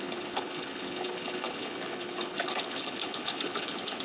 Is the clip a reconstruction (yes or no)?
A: yes